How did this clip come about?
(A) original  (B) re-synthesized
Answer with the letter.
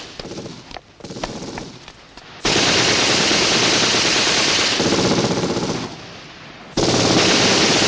A